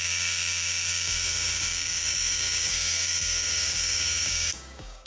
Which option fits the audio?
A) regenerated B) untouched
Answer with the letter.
A